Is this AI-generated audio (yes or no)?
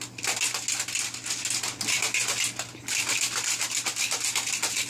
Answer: no